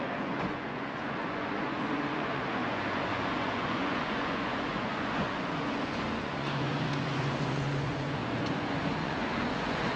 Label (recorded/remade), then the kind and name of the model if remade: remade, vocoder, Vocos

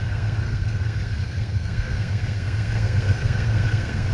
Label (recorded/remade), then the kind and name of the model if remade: remade, codec, SNAC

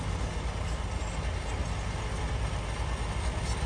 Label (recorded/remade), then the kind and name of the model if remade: recorded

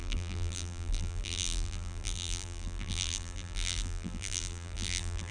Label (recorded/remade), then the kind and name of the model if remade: remade, vocoder, BigVGAN v2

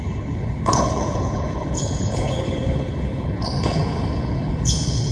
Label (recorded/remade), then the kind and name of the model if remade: remade, codec, HILCodec